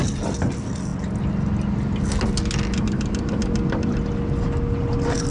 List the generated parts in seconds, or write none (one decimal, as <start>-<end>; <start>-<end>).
none